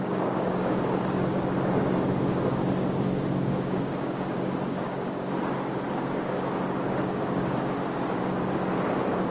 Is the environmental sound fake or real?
fake